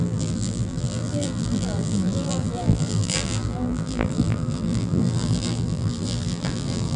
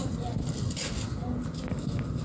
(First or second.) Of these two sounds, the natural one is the second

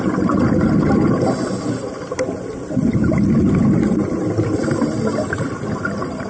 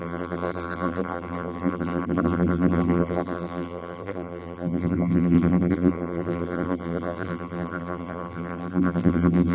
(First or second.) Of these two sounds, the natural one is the first